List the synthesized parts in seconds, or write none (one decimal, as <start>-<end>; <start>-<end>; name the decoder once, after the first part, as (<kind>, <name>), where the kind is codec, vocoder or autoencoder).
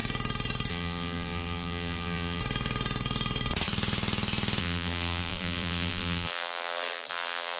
0.7-2.4 (vocoder, BigVGAN v2); 4.6-7.6